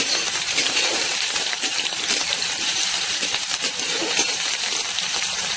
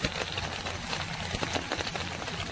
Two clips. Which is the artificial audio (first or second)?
first